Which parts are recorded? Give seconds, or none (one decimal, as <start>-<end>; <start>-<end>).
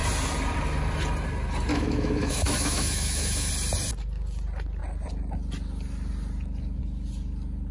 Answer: 0.0-1.7; 3.5-7.7